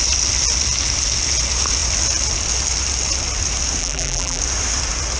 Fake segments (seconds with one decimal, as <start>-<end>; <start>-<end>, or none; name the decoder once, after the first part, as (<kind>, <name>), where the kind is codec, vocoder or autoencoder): 3.8-4.4 (vocoder, BigVGAN v2)